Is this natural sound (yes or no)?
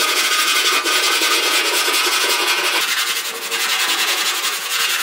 no